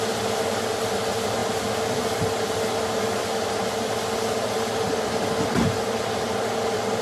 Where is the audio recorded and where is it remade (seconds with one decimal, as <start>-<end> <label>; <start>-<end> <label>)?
0.0-7.0 recorded